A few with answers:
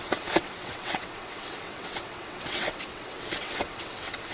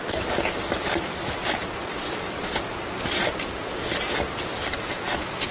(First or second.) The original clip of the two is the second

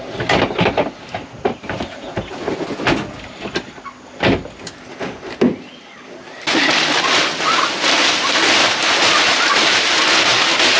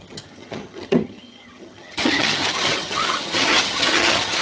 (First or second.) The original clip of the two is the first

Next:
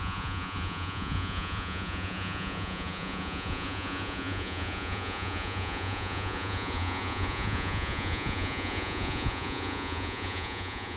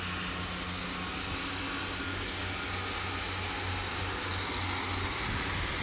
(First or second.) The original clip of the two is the second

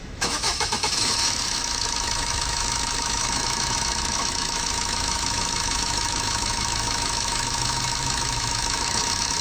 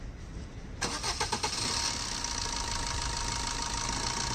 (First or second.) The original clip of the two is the second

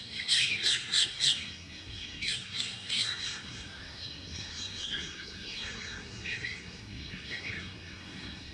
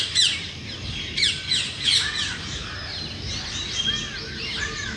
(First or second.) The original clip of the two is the second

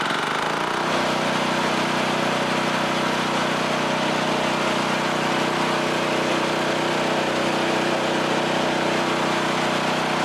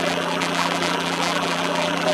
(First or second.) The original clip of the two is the first